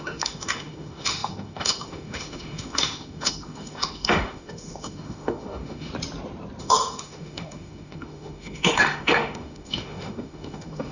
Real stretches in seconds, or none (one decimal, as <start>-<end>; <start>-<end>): 5.9-6.6